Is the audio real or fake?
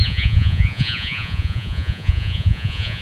fake